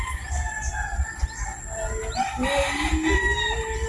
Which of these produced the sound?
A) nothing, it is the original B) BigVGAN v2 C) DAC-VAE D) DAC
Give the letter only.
A